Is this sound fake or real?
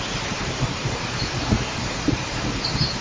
fake